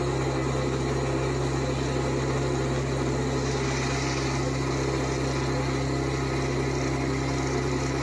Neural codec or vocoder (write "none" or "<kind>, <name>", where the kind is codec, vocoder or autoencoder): none